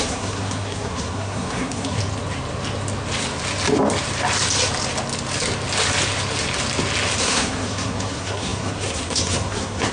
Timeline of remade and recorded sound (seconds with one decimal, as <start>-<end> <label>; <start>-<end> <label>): 0.0-2.0 remade; 2.0-7.2 recorded; 7.2-9.9 remade